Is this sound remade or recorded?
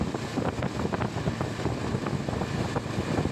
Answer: recorded